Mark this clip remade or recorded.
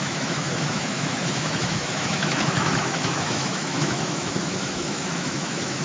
remade